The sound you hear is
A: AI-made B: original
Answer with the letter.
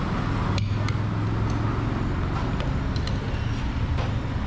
B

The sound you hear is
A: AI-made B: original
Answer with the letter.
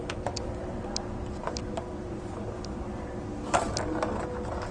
B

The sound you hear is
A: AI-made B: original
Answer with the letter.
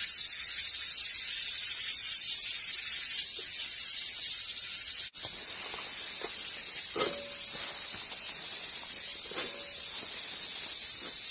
B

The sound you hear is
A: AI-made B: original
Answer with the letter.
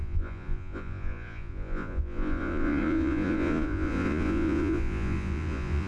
A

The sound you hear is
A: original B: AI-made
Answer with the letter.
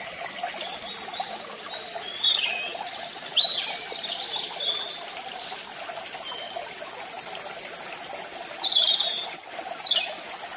A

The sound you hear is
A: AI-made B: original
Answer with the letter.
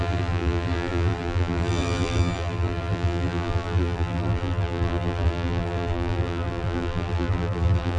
A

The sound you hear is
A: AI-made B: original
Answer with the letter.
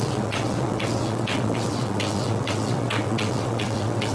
A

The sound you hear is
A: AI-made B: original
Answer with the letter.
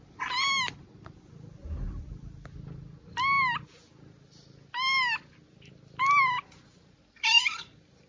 B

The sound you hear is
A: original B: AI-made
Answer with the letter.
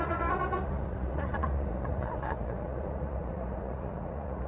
B